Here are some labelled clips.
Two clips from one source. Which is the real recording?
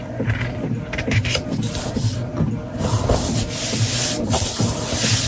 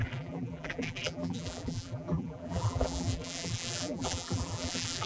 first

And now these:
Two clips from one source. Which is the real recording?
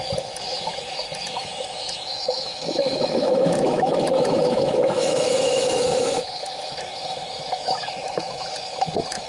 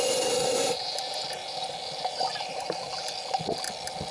second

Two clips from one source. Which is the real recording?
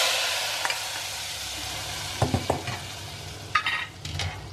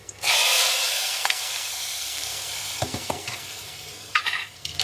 first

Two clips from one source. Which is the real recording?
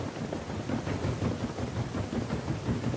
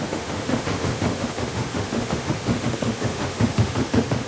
first